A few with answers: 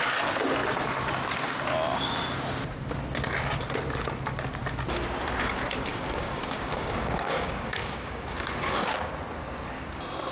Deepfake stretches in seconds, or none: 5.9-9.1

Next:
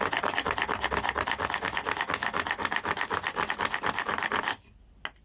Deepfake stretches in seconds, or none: none

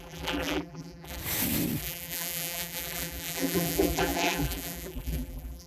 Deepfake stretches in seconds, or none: 0.0-1.2; 1.8-5.7

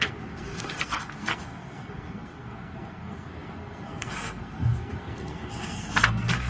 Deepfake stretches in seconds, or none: 0.0-6.5